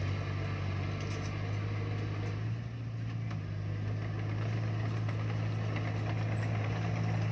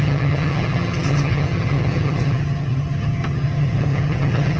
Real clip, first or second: first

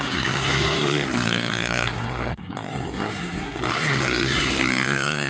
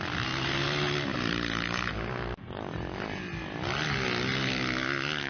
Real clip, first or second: second